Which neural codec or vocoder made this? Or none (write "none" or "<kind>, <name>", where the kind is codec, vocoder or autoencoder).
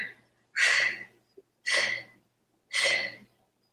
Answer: none